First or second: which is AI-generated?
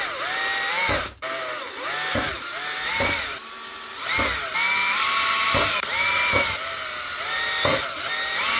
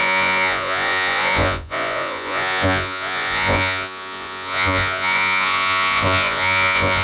second